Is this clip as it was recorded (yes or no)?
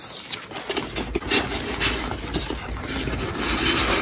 yes